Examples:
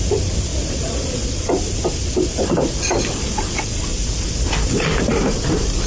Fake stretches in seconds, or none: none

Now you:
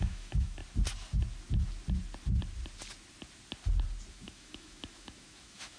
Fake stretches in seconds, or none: 0.0-0.6; 4.1-5.8

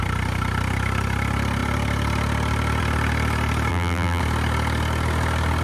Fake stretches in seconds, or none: 3.7-4.2